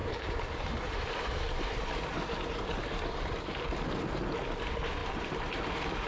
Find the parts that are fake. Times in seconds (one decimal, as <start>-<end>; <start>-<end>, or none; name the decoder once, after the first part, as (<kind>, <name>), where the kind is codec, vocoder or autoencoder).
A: 0.0-2.0 (vocoder, BigVGAN v2); 5.0-5.6